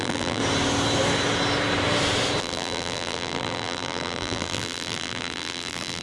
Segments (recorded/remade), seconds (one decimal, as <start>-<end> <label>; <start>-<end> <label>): 0.0-0.4 remade; 0.4-2.4 recorded; 2.4-6.0 remade